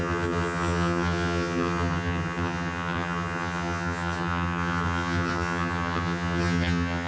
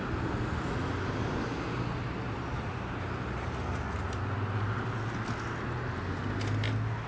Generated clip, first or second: first